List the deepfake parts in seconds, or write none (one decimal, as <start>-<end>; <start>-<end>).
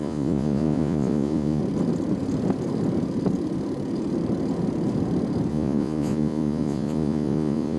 0.0-1.6; 5.5-7.8